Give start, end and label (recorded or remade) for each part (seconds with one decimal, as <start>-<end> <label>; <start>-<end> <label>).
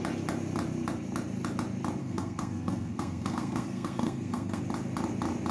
0.0-2.0 recorded; 2.0-4.6 remade; 4.6-5.5 recorded